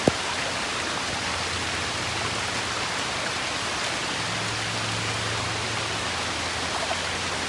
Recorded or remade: recorded